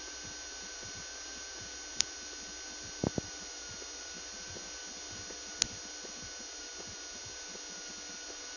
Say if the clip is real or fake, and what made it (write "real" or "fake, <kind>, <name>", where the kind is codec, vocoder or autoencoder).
real